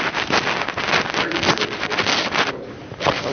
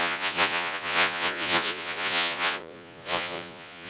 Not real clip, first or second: second